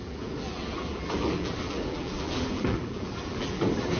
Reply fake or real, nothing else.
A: fake